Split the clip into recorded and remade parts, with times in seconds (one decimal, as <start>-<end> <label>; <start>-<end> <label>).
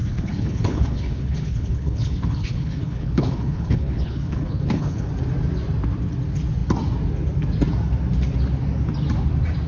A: 0.0-5.1 remade; 5.1-9.7 recorded